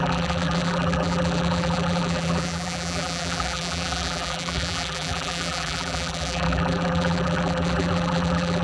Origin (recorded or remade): remade